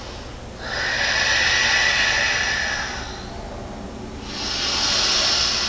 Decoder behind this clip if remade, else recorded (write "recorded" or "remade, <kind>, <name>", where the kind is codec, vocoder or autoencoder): recorded